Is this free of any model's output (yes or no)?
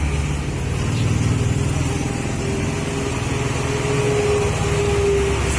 yes